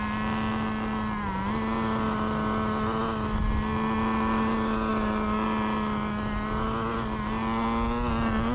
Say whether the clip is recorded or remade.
recorded